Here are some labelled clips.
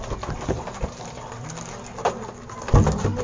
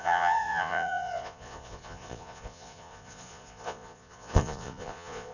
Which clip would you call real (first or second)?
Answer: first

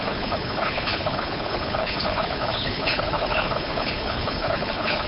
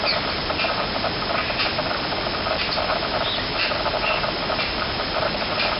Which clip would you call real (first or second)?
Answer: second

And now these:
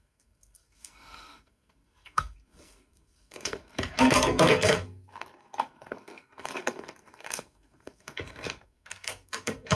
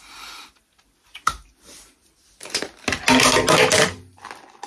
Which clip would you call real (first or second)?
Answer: second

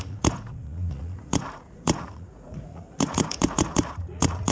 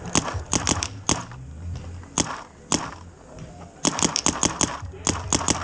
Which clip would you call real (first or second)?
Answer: second